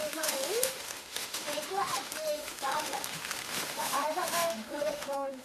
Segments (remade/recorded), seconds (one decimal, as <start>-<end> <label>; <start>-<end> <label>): 0.0-5.4 remade